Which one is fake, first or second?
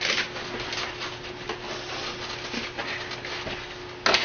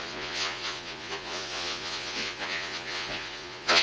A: second